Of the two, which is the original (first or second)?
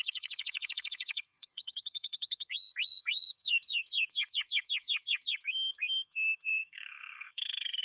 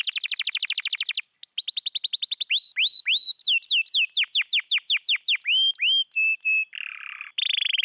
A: second